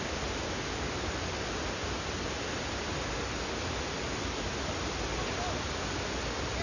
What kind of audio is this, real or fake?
real